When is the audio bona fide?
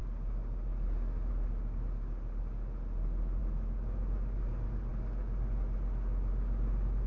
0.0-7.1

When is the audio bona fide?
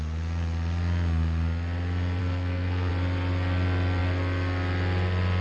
0.0-2.2; 2.9-5.4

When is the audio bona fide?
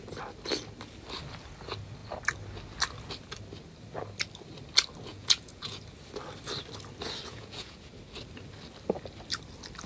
0.0-5.1; 5.8-7.3; 7.9-9.9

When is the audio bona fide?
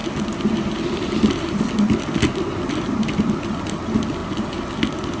0.0-5.2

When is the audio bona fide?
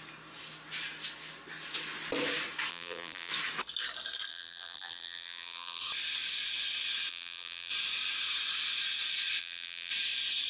0.0-2.7; 3.3-4.3; 5.8-7.1; 7.7-9.4; 9.9-10.5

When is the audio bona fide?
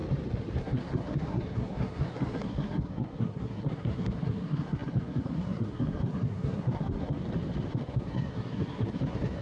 0.0-0.6; 7.2-7.7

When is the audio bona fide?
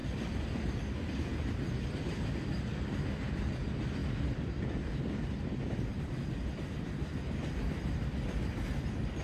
0.5-5.9; 7.2-9.2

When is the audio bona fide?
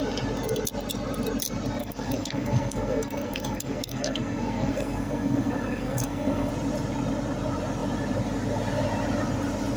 0.0-1.8; 6.5-9.8